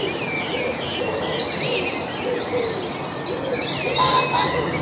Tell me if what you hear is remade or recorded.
recorded